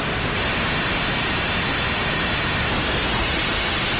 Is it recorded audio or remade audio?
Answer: recorded